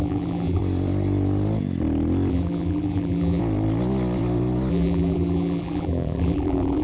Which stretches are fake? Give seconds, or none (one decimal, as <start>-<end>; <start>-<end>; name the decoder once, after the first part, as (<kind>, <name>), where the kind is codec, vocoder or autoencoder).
0.0-0.6 (vocoder, BigVGAN v2); 2.3-3.4; 4.7-6.8